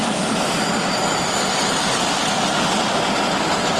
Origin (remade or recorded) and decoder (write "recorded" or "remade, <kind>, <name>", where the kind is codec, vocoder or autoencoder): recorded